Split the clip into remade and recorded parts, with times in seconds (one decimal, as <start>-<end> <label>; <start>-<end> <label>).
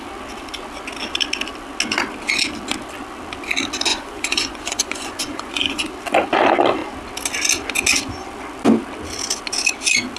0.0-3.9 recorded; 3.9-5.9 remade; 5.9-10.2 recorded